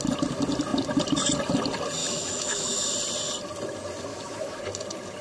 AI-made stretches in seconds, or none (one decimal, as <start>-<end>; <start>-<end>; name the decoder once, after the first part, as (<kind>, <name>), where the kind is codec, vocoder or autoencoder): 2.0-2.9 (autoencoder, DAC-VAE); 4.1-4.6